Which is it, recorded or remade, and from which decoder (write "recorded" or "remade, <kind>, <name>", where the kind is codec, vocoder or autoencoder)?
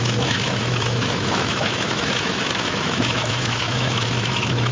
remade, autoencoder, DAC-VAE